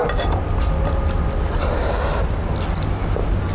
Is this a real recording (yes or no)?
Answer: yes